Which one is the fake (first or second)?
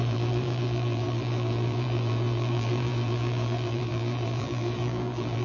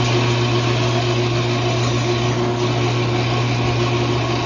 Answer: first